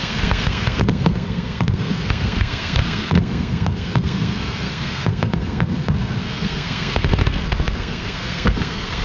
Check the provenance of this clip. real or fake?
fake